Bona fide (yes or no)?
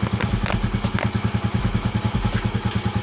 yes